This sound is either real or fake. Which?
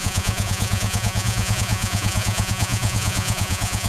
fake